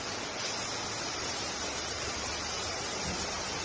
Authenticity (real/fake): real